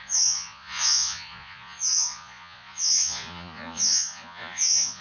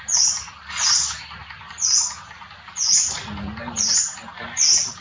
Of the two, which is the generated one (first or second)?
first